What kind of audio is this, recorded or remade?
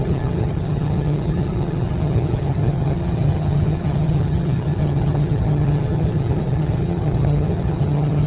remade